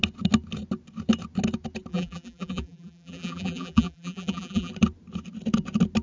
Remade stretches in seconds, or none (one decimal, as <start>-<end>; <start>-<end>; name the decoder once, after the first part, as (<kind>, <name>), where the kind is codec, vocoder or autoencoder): 1.9-4.7 (vocoder, BigVGAN v2)